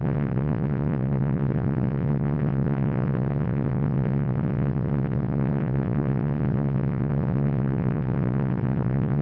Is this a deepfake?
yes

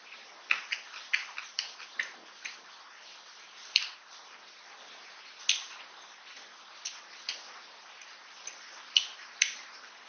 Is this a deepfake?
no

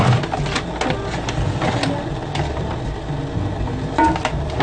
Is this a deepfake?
no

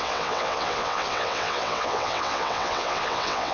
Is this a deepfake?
yes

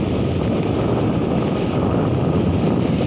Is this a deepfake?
no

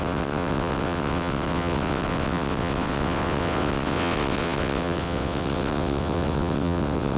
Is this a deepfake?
yes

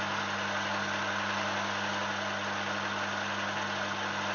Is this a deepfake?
no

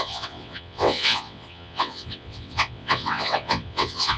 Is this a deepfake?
yes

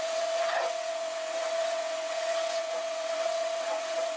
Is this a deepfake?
yes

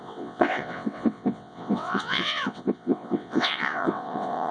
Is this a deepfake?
yes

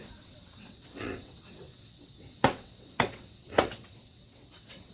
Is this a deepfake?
yes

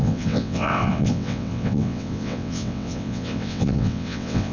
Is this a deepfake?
yes